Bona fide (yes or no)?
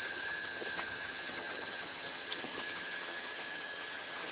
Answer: no